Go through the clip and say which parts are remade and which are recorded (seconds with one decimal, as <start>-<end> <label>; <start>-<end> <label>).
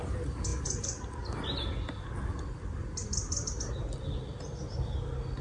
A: 0.0-5.4 recorded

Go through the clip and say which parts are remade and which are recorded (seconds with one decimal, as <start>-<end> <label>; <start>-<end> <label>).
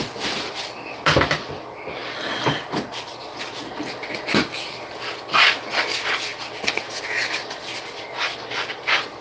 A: 0.0-9.2 recorded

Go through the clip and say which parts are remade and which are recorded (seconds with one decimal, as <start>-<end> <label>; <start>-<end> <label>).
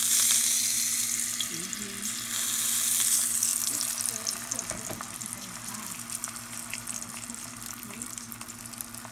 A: 0.0-3.5 recorded; 3.5-8.3 remade; 8.3-9.1 recorded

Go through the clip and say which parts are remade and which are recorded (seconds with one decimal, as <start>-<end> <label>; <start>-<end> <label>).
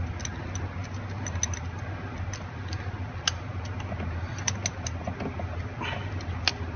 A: 0.0-6.8 recorded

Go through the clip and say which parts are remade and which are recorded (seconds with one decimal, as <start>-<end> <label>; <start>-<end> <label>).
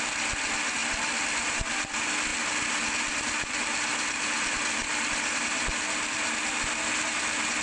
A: 0.0-7.6 recorded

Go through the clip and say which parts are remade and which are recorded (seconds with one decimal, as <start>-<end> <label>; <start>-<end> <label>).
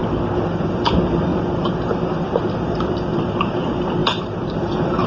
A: 0.0-5.1 remade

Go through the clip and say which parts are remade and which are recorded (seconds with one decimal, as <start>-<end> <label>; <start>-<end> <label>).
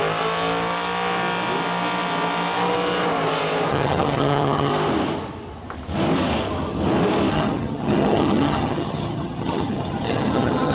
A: 0.0-3.7 recorded; 3.7-4.7 remade; 4.7-7.3 recorded; 7.3-10.7 remade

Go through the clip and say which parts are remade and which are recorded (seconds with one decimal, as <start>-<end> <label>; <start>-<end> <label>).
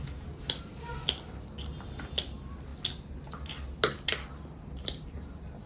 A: 0.0-5.7 recorded